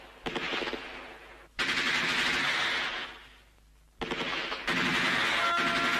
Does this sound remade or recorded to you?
recorded